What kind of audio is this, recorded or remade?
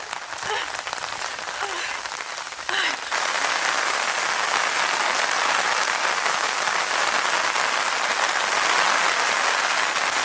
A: recorded